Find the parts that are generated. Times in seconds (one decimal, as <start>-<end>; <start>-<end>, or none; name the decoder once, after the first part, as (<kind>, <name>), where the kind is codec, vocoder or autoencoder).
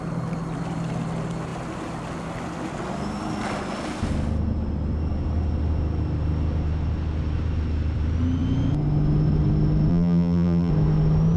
9.9-10.7 (vocoder, BigVGAN v2)